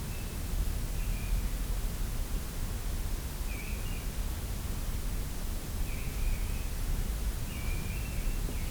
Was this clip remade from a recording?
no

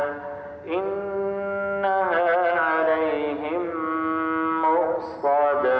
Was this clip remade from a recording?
no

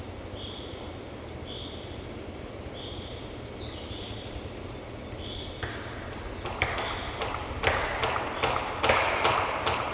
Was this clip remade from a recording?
no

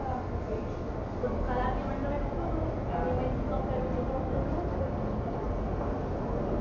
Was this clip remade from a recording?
no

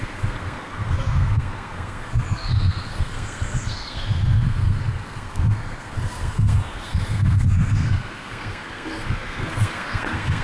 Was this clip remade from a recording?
yes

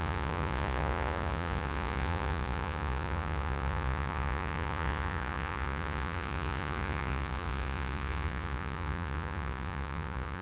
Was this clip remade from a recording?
yes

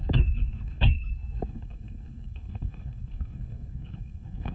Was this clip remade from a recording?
yes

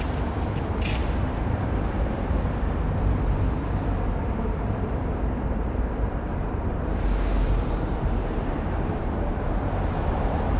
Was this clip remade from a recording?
yes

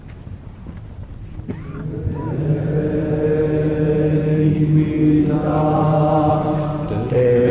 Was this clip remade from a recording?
no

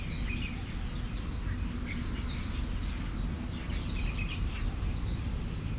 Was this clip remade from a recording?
no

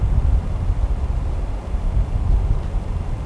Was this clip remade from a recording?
no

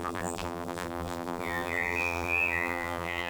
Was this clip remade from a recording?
yes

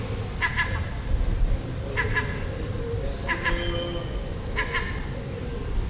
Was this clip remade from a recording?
no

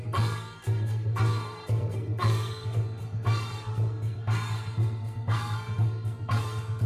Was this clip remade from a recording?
yes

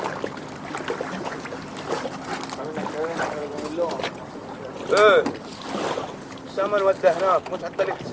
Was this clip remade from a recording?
no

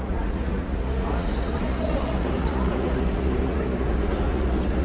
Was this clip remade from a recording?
yes